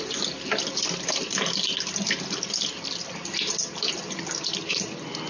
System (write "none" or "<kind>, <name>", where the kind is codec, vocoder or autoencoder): none